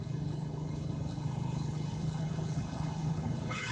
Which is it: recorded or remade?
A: remade